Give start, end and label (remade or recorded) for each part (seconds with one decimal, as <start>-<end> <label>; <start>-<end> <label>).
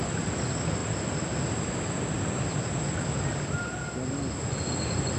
0.0-5.2 recorded